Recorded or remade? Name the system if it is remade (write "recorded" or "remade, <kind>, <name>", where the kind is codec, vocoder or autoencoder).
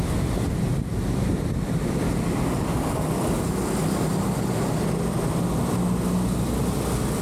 recorded